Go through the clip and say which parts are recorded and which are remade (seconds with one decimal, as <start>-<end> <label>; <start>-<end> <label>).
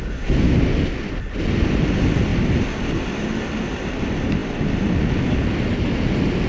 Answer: 0.0-6.5 recorded